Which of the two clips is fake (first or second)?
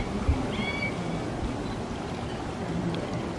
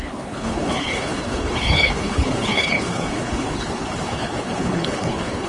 second